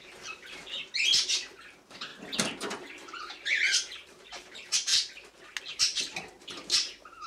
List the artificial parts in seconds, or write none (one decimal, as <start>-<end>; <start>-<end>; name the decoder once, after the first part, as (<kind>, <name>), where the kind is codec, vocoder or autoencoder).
0.0-2.1 (vocoder, BigVGAN v2); 2.6-4.9; 5.6-7.3